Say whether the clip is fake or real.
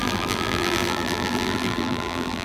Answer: fake